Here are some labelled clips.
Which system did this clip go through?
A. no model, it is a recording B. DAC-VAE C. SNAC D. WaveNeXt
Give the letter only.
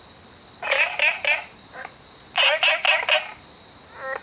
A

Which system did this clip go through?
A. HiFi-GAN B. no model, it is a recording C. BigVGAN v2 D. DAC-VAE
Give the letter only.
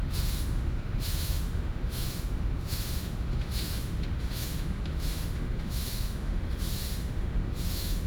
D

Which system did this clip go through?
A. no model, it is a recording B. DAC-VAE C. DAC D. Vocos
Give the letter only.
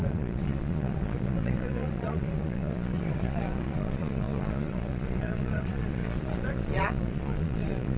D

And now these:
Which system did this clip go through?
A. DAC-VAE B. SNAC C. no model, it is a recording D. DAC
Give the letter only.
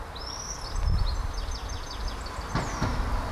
C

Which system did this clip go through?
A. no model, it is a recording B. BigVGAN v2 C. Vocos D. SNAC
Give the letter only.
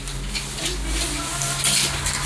A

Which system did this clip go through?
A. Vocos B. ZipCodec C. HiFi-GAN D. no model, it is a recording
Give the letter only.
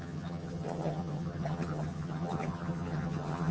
C